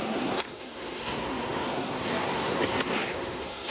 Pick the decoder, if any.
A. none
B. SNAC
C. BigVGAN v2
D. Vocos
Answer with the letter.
B